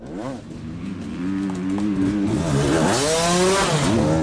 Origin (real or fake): real